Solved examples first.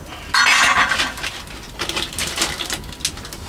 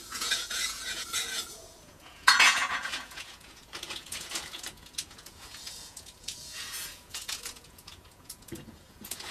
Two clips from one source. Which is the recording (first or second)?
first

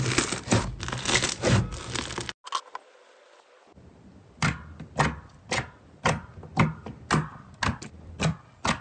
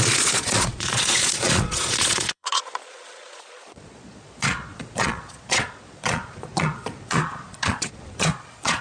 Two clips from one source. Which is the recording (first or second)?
first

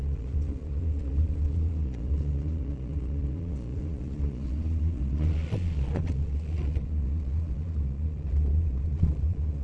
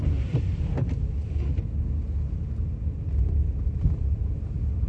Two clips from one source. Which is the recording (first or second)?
second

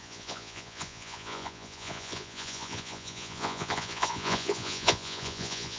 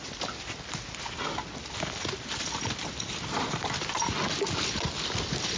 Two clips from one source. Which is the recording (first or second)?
second